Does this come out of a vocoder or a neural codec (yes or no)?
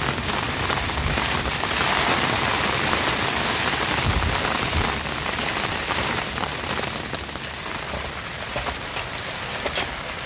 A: no